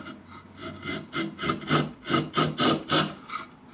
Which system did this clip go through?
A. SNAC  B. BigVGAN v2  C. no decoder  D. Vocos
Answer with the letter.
C